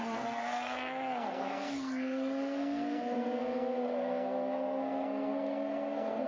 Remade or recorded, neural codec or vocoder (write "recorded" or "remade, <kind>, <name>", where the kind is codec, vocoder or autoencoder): remade, codec, SNAC